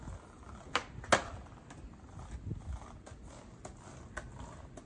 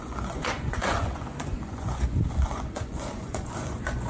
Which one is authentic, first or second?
first